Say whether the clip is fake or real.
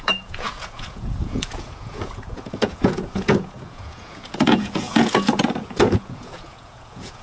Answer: fake